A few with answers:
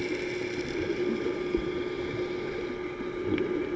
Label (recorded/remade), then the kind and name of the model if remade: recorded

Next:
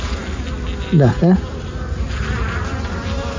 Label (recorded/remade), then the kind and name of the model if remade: recorded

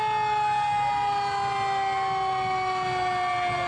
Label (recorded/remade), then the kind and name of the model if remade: recorded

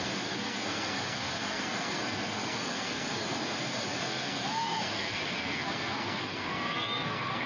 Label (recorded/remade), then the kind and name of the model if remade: remade, codec, SNAC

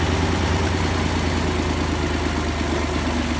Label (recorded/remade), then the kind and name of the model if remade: recorded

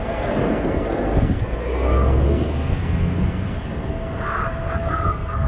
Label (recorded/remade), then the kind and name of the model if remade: remade, codec, SNAC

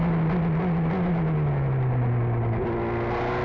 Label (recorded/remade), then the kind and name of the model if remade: recorded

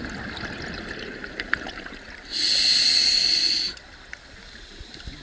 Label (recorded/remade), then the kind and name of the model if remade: recorded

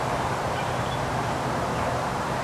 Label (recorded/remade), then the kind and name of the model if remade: remade, vocoder, BigVGAN v2